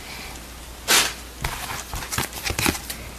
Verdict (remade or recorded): recorded